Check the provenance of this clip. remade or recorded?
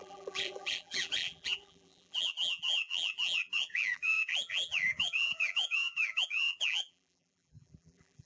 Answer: remade